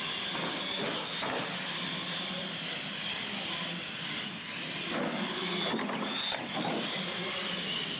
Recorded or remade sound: recorded